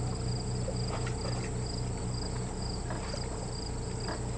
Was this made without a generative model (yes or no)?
yes